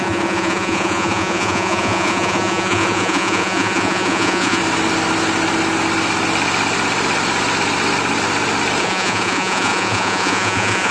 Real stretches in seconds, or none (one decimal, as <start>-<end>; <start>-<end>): 4.6-8.8